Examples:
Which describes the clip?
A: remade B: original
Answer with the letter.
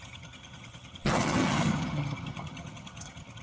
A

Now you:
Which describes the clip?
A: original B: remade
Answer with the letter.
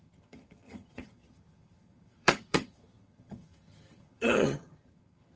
B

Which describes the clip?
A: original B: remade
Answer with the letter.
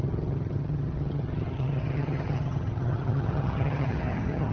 B